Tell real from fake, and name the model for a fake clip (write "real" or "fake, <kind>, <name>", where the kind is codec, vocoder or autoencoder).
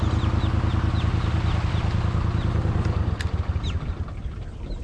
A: real